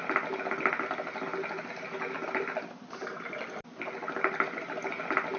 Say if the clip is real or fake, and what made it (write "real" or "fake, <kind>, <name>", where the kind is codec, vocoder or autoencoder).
real